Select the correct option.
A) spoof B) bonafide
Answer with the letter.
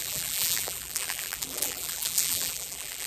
A